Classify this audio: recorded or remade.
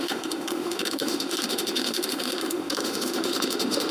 remade